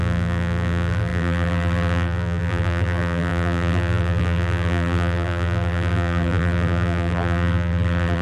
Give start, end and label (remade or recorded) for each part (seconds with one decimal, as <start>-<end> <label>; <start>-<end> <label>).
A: 0.0-8.2 remade